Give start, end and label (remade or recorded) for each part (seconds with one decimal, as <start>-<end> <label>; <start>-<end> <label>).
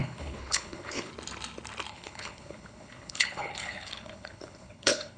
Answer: 0.0-1.1 remade; 1.1-1.9 recorded; 1.9-5.2 remade